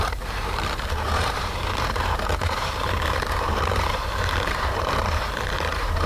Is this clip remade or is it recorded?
remade